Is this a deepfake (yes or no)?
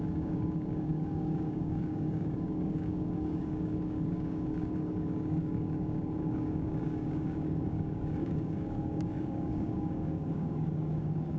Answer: yes